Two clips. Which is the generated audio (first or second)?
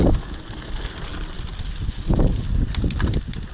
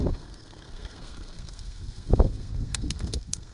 second